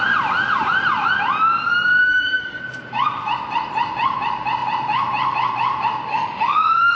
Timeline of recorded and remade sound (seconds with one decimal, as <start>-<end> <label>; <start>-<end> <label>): 0.0-2.0 recorded; 2.0-2.6 remade; 2.6-6.1 recorded; 6.1-6.9 remade